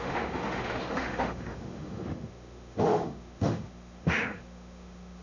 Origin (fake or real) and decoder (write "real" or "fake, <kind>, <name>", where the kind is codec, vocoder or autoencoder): fake, autoencoder, DAC-VAE